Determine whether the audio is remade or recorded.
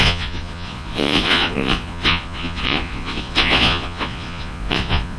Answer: remade